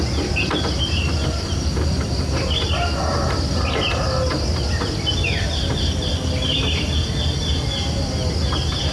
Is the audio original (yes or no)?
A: yes